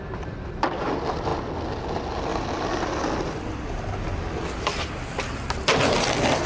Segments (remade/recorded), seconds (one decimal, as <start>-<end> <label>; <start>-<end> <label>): 0.0-6.5 recorded